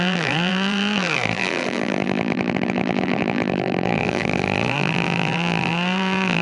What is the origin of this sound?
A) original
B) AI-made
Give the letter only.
B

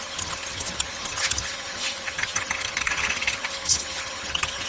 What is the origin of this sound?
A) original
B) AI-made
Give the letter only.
B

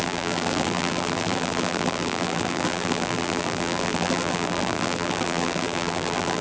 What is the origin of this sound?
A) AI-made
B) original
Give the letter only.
A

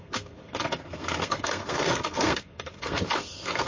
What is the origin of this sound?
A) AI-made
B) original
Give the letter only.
A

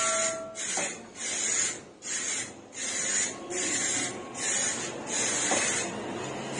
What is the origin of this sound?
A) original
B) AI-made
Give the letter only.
A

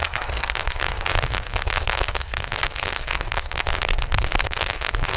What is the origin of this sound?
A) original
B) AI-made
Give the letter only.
B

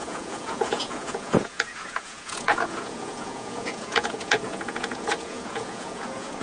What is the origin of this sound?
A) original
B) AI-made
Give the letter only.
B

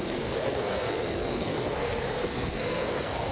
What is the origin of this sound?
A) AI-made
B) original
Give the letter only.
A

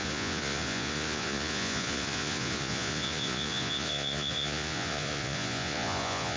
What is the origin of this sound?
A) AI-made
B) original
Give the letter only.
A